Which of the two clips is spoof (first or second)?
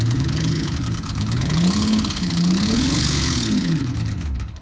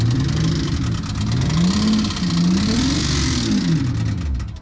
first